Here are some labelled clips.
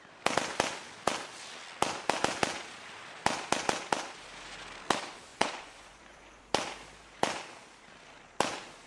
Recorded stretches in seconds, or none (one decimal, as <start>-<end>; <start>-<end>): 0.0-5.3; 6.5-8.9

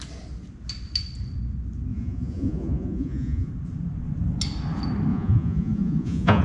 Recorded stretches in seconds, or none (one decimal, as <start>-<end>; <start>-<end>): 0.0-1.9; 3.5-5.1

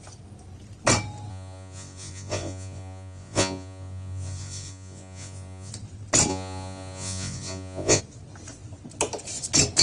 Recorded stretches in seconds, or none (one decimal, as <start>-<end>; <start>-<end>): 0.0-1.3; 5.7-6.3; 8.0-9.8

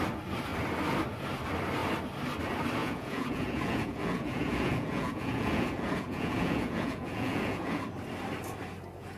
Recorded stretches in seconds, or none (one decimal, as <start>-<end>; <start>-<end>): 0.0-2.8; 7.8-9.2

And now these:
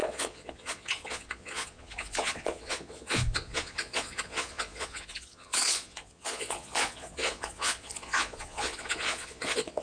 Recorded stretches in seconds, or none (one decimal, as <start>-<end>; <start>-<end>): none

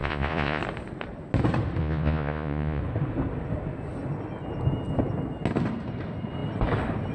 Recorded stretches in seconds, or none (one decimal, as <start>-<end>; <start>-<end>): 0.6-1.8; 2.8-7.1

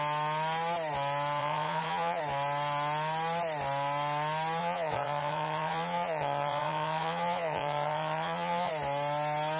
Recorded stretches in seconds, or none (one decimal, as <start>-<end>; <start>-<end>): 0.0-1.4; 2.2-4.6; 8.7-9.6